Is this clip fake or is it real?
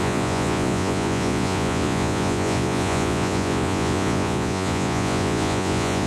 fake